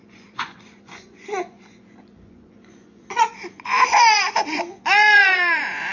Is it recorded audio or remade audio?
remade